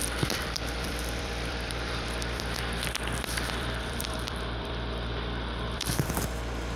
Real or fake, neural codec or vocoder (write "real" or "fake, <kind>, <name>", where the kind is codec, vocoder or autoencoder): fake, vocoder, BigVGAN v2